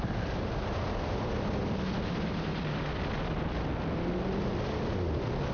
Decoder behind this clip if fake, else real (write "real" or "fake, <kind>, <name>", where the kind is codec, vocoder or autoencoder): real